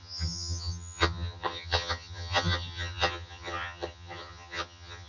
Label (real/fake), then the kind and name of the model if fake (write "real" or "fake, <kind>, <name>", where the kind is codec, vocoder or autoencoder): fake, vocoder, HiFi-GAN